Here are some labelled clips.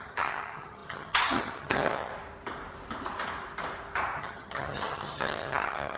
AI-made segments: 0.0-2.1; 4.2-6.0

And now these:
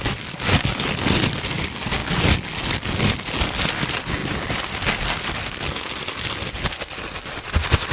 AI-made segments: none